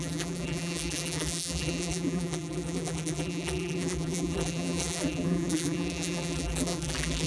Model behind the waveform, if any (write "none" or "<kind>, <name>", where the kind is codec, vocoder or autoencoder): vocoder, BigVGAN v2